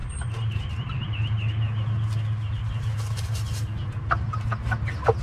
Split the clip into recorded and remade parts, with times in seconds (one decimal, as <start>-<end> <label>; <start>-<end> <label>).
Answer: 0.0-0.7 remade; 0.7-5.2 recorded